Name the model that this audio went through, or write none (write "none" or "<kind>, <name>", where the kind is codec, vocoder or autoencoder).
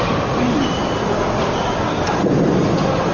vocoder, BigVGAN v2